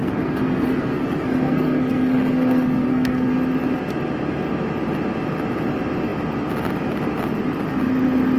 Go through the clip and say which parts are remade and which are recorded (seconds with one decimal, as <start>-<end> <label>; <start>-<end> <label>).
0.0-3.3 remade; 3.3-8.4 recorded

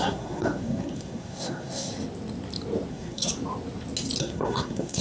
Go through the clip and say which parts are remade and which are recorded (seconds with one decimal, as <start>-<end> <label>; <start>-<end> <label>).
0.0-1.9 remade; 1.9-2.9 recorded; 2.9-3.3 remade; 3.3-4.2 recorded; 4.2-5.0 remade